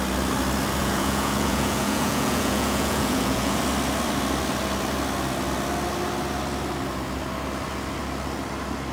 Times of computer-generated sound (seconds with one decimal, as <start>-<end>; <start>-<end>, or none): 0.8-3.6